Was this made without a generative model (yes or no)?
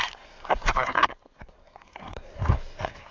no